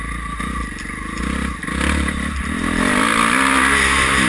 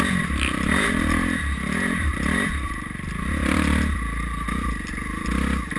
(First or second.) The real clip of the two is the first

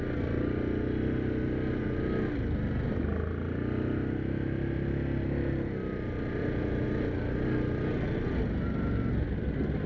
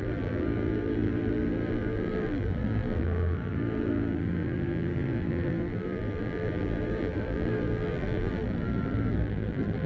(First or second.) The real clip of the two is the first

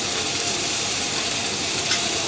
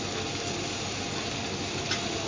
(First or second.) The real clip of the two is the second